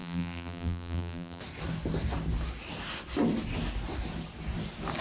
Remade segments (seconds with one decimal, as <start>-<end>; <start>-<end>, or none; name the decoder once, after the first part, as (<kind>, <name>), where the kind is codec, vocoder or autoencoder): 0.0-1.4 (vocoder, BigVGAN v2)